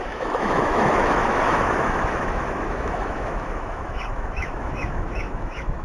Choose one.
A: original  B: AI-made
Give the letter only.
B